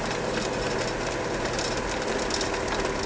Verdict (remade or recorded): recorded